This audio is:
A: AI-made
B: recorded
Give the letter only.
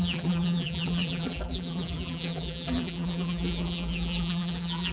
A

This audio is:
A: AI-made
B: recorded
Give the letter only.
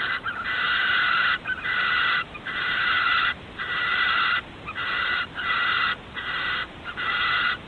A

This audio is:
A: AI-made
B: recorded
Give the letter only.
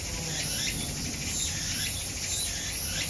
B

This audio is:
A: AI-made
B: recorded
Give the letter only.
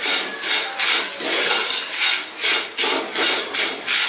B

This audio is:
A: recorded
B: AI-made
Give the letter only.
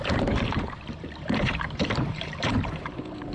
B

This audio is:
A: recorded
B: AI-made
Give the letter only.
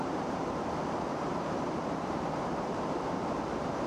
B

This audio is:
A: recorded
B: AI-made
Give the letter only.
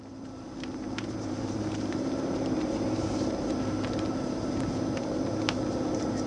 B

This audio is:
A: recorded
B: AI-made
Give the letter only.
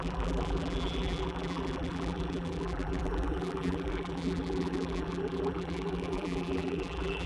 B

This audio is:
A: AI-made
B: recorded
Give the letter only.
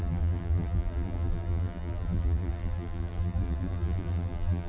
A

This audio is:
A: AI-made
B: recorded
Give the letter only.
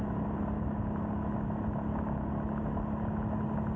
B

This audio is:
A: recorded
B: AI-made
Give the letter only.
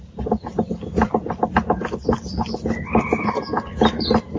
B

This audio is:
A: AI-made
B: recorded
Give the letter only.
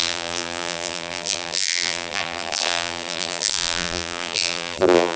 A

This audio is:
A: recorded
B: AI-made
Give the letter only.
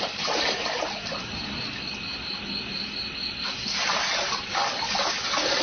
A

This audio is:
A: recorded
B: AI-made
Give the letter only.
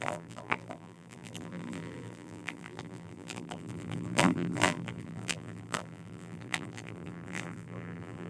B